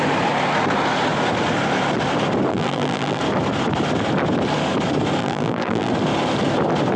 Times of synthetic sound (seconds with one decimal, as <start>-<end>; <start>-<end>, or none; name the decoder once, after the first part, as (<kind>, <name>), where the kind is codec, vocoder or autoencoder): 2.5-3.2 (vocoder, BigVGAN v2); 5.2-5.9